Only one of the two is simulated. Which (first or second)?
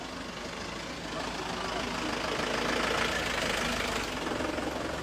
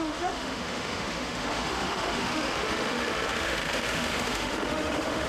second